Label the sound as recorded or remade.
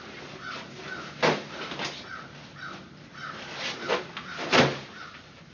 recorded